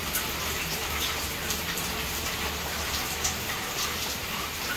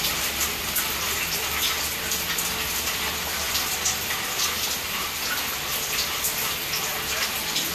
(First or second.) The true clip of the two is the second